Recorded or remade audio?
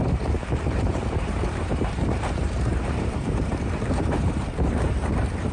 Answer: remade